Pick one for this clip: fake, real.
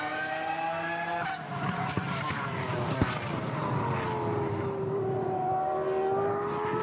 real